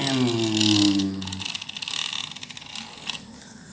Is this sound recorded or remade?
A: recorded